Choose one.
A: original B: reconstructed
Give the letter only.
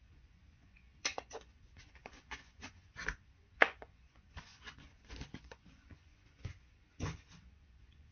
B